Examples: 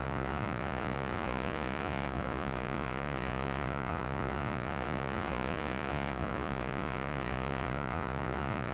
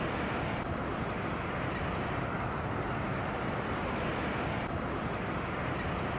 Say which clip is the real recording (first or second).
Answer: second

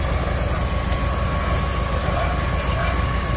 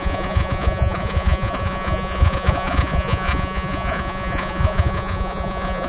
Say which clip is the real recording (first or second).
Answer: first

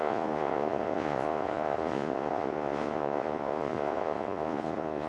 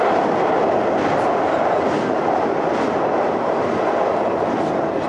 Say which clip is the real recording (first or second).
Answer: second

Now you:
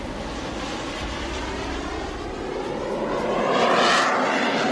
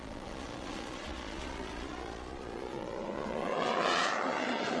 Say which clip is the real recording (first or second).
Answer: first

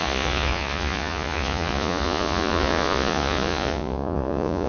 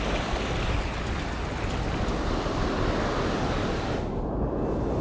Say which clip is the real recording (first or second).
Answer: second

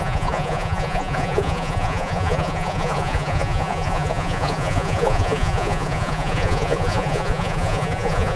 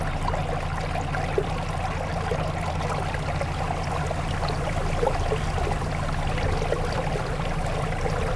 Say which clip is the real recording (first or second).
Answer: second